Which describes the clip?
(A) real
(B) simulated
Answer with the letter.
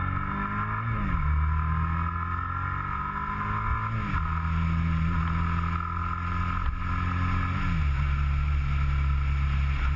A